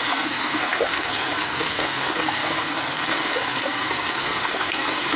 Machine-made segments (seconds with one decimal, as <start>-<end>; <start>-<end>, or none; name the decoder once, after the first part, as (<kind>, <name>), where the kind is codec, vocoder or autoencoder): 0.0-5.2 (codec, SNAC)